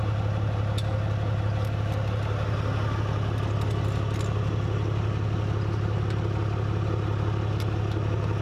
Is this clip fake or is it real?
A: real